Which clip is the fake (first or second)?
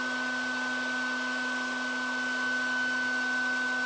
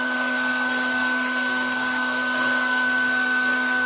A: second